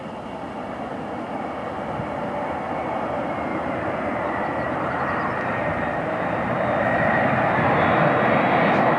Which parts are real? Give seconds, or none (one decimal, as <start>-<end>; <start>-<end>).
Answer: 0.0-3.5; 7.5-9.0